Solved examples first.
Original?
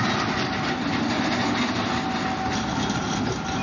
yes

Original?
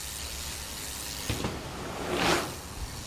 yes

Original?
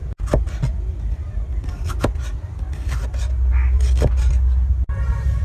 yes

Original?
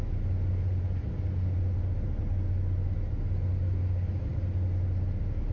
yes